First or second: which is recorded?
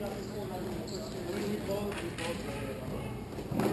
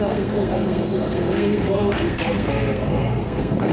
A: first